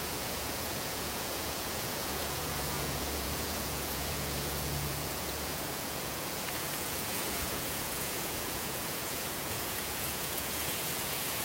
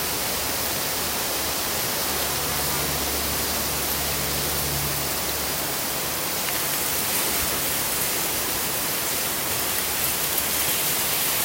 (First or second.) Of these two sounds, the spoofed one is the first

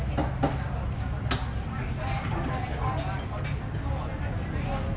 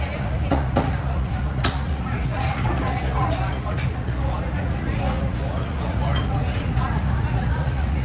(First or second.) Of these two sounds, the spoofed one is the second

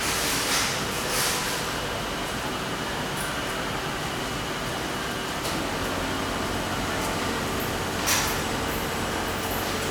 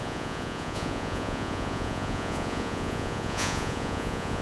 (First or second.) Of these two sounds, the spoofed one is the second